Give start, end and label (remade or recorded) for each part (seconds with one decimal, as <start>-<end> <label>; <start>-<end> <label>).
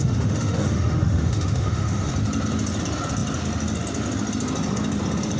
0.0-2.1 remade; 2.1-5.4 recorded